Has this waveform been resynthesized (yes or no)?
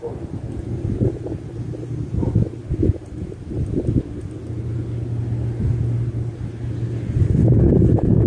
no